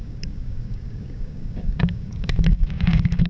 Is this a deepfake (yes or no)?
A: yes